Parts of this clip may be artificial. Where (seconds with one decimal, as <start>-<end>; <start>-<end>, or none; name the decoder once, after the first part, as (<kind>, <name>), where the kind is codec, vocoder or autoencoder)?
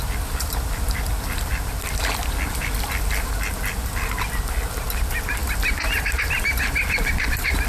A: none